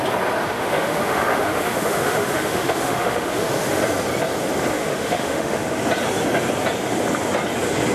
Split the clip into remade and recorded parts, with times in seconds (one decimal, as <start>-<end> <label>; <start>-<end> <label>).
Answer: 0.0-0.4 recorded; 0.4-3.8 remade; 3.8-4.7 recorded; 4.7-5.8 remade; 5.8-7.9 recorded